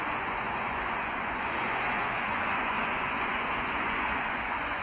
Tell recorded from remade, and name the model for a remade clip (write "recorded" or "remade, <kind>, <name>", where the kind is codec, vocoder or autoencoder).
remade, vocoder, Vocos